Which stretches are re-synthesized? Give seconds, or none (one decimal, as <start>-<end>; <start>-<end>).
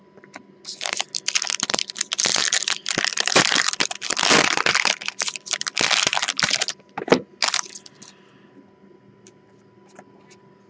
2.3-5.9